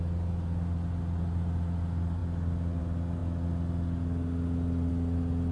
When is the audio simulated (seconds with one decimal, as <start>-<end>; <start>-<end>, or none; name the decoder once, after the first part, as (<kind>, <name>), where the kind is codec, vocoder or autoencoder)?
none